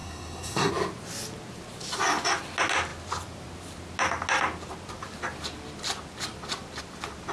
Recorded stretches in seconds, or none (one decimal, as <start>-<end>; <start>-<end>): 0.7-7.3